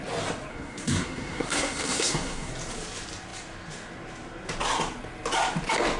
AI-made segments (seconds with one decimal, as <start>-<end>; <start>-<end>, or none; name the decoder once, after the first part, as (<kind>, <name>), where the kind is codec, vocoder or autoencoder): 0.5-2.5 (codec, SNAC)